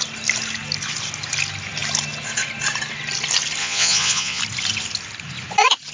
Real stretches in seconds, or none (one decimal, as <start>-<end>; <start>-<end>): 0.0-3.6; 4.4-5.9